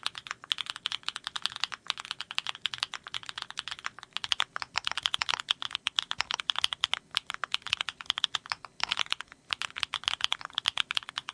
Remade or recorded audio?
recorded